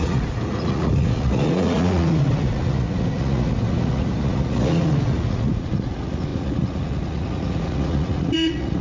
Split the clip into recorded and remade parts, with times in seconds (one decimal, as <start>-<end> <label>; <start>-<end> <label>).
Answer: 0.0-8.8 remade